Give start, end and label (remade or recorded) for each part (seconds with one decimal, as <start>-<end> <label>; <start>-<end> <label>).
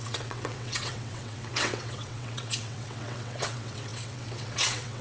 0.0-5.0 remade